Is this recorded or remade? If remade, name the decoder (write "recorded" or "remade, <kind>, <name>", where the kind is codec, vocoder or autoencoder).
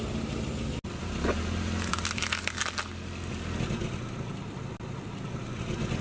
recorded